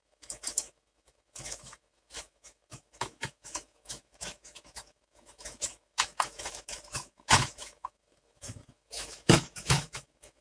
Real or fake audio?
fake